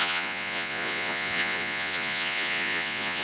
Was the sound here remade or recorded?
remade